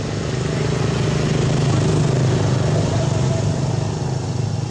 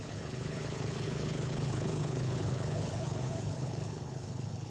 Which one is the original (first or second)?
first